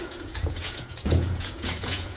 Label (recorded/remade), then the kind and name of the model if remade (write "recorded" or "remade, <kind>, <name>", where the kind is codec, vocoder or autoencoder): remade, vocoder, Vocos